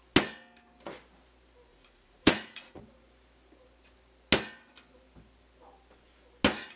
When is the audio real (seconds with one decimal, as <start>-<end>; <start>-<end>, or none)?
0.0-1.7; 2.8-6.8